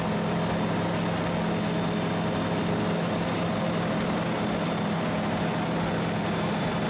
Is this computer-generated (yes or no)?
no